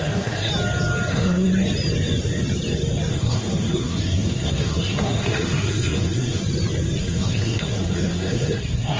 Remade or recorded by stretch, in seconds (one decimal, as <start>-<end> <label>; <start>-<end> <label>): 0.0-0.5 remade; 0.5-1.1 recorded; 1.1-1.5 remade; 1.5-3.1 recorded; 3.1-6.4 remade; 6.4-7.0 recorded; 7.0-9.0 remade